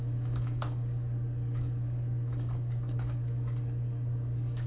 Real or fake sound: fake